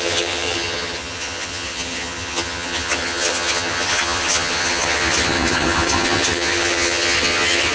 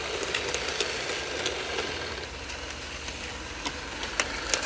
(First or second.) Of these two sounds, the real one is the second